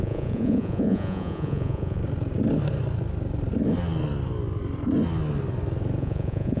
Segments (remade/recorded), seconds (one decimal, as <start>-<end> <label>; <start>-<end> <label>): 0.0-2.0 remade; 2.0-6.0 recorded; 6.0-6.6 remade